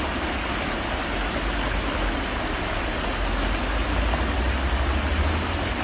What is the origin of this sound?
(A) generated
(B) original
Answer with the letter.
B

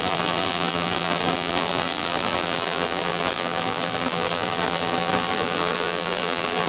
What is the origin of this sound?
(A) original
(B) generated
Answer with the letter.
B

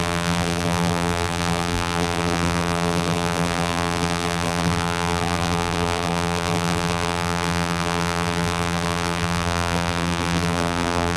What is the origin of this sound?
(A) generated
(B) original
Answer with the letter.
A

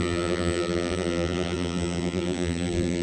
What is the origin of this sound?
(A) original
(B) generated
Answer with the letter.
B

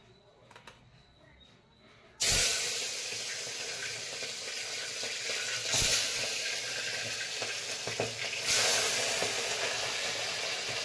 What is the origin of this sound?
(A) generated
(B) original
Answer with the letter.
B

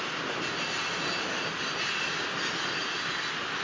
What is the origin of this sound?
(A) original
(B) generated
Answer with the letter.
A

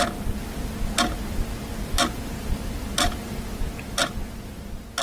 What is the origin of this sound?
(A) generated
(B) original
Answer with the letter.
B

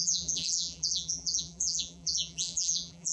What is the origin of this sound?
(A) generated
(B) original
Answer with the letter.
A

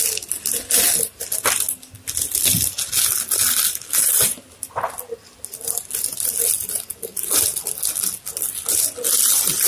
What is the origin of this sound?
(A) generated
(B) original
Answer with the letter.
B